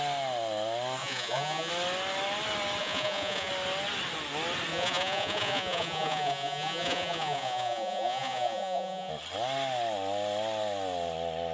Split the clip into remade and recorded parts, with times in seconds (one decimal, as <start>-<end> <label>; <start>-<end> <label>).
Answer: 0.0-1.0 recorded; 1.0-1.7 remade; 1.7-2.8 recorded; 2.8-3.5 remade; 3.5-4.7 recorded; 4.7-9.1 remade; 9.1-11.5 recorded